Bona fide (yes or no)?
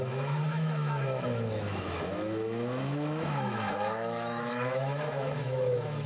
no